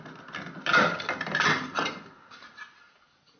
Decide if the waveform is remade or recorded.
recorded